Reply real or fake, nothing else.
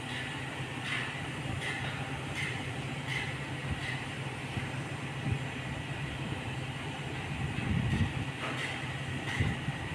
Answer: fake